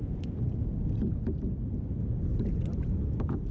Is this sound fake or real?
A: real